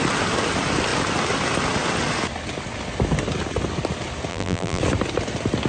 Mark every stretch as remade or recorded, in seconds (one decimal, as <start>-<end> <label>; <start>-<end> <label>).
0.0-4.3 recorded; 4.3-4.8 remade; 4.8-5.7 recorded